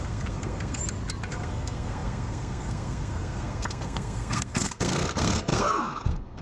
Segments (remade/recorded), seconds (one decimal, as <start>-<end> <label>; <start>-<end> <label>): 0.0-0.8 remade; 0.8-1.3 recorded; 1.3-6.4 remade